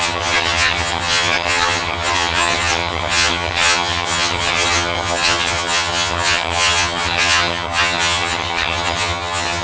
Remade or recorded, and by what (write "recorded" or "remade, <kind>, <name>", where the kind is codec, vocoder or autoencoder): remade, vocoder, HiFi-GAN